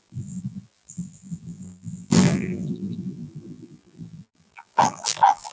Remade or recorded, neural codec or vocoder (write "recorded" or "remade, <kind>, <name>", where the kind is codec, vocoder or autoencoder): remade, vocoder, BigVGAN v2